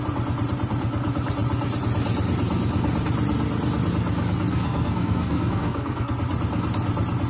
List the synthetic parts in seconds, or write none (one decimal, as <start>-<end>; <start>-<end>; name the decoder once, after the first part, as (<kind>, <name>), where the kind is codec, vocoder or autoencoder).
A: 4.5-6.1 (codec, SNAC)